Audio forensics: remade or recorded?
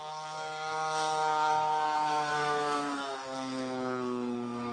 remade